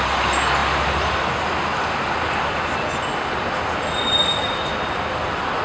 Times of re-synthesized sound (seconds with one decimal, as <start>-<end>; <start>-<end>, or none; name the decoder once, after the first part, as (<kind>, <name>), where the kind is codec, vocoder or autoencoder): none